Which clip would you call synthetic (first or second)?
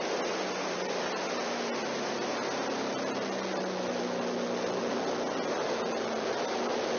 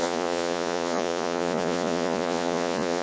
second